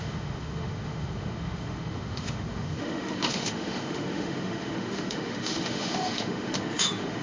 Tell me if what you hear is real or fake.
fake